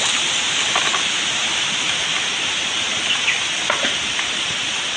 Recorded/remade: recorded